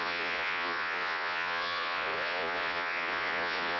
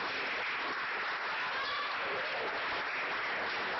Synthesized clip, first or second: first